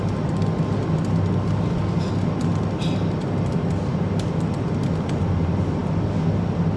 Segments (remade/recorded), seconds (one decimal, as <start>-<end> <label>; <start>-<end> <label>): 0.0-6.8 recorded